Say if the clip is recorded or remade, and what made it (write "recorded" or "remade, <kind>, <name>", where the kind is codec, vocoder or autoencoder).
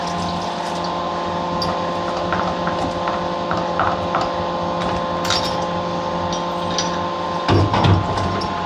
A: recorded